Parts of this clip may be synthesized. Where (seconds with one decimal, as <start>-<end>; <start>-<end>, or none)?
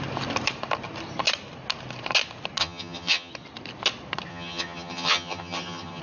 2.6-3.3; 4.3-6.0